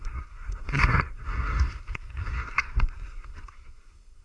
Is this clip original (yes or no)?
no